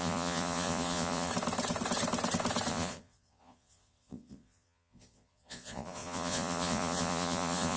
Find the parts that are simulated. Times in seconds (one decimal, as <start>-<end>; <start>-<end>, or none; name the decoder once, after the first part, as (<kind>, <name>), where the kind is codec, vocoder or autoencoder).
0.0-1.3 (vocoder, Vocos); 2.7-7.8